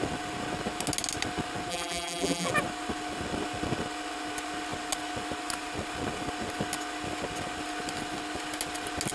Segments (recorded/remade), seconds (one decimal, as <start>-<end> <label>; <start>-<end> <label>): 0.0-1.7 recorded; 1.7-2.5 remade; 2.5-9.1 recorded